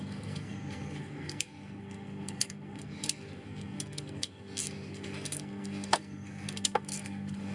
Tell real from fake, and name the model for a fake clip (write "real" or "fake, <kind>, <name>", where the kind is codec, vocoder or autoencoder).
fake, codec, SNAC